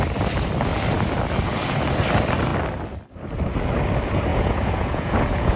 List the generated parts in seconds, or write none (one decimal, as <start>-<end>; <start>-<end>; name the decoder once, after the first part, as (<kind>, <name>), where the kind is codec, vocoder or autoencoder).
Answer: 4.3-5.6 (vocoder, Vocos)